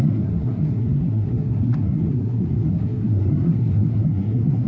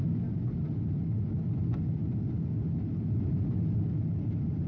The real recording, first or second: second